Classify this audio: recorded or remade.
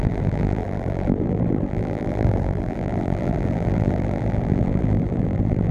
remade